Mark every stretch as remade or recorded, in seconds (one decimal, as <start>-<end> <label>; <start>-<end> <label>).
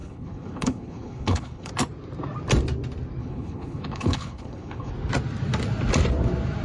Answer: 0.0-1.7 remade; 1.7-3.2 recorded; 3.2-4.9 remade; 4.9-6.6 recorded